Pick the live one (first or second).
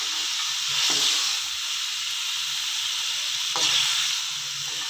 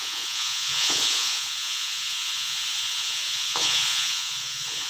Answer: first